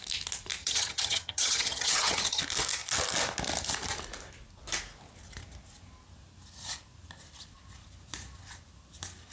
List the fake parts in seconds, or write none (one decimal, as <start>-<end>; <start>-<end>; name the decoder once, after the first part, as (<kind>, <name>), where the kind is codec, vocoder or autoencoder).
0.6-2.4 (vocoder, HiFi-GAN)